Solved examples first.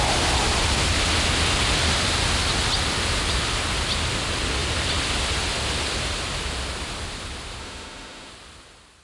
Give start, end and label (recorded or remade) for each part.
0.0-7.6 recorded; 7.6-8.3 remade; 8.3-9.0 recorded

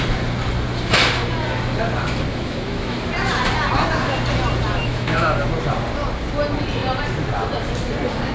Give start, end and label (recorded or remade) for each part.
0.0-2.3 recorded; 2.3-3.0 remade; 3.0-4.8 recorded; 4.8-5.4 remade; 5.4-8.3 recorded

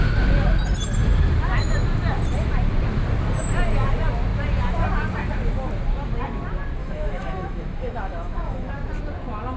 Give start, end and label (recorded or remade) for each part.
0.0-6.8 recorded; 6.8-8.7 remade; 8.7-9.6 recorded

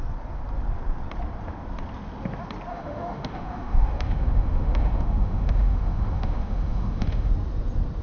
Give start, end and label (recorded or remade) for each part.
0.0-2.7 recorded; 2.7-7.3 remade; 7.3-8.0 recorded

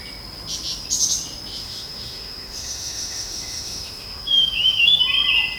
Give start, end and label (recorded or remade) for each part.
0.0-1.6 recorded; 1.6-5.0 remade; 5.0-5.6 recorded

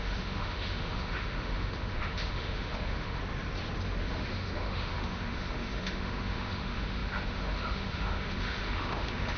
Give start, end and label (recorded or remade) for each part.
0.0-3.2 remade; 3.2-4.0 recorded; 4.0-9.4 remade